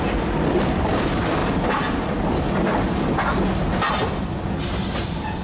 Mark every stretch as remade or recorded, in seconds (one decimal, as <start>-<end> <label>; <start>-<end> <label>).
0.0-5.4 recorded